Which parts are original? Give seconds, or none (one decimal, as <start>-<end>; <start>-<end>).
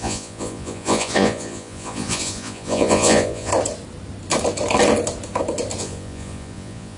3.5-5.8